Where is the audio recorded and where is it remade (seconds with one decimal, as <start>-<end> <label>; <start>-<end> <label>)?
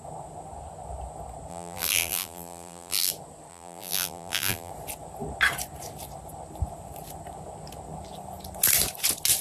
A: 0.0-1.5 recorded; 1.5-3.1 remade; 3.1-3.5 recorded; 3.5-4.7 remade; 4.7-9.4 recorded